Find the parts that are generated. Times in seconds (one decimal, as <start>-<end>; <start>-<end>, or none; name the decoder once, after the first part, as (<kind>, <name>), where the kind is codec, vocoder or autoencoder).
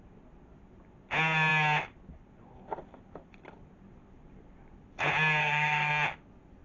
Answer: 5.4-5.9 (codec, SNAC)